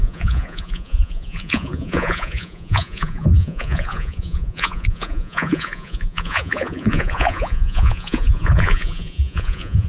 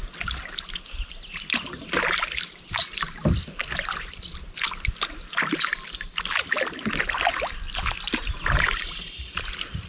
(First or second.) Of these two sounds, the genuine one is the second